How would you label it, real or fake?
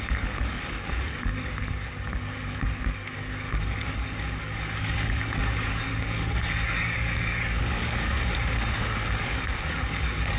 fake